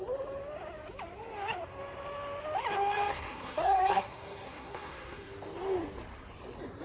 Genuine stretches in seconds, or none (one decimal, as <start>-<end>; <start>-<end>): 0.0-3.1; 5.3-6.8